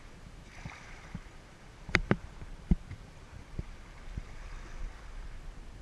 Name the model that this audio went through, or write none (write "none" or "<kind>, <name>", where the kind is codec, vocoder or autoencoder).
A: vocoder, BigVGAN v2